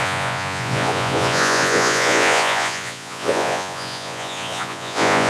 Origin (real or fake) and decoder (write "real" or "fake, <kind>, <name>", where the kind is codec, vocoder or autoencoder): fake, vocoder, Vocos